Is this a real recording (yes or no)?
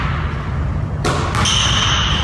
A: yes